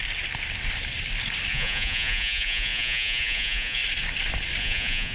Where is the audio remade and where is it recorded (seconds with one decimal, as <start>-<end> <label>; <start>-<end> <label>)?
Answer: 0.0-1.5 recorded; 1.5-3.8 remade; 3.8-4.6 recorded; 4.6-5.1 remade